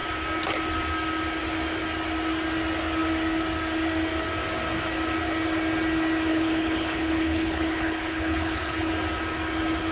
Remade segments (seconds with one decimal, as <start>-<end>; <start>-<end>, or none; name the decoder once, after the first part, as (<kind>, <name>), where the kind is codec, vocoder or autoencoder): 6.3-8.9 (codec, HILCodec)